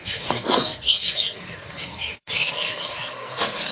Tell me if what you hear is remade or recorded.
remade